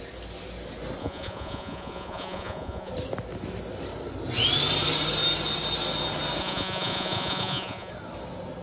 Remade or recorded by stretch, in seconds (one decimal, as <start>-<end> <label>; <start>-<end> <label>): 0.0-1.0 recorded; 1.0-2.9 remade; 2.9-6.4 recorded; 6.4-7.9 remade; 7.9-8.6 recorded